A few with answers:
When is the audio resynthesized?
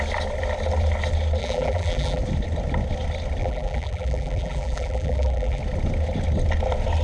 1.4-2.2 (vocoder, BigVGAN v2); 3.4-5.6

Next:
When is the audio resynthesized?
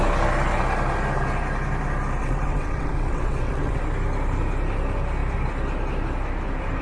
2.2-3.8 (vocoder, WaveNeXt)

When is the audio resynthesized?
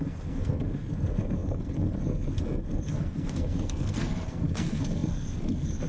0.0-5.9 (codec, SNAC)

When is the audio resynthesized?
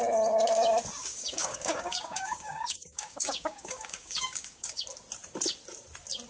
1.0-4.8 (codec, DAC)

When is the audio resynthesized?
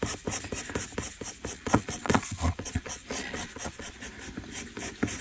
1.5-3.9 (vocoder, Vocos)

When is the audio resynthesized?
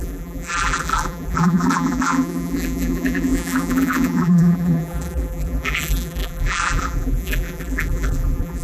0.0-8.6 (vocoder, BigVGAN v2)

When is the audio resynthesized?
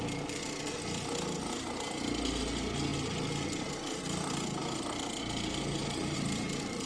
5.8-6.9 (vocoder, BigVGAN v2)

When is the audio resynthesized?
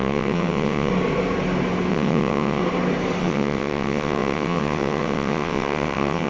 0.0-0.9 (vocoder, WaveNeXt); 1.9-2.6; 3.2-6.3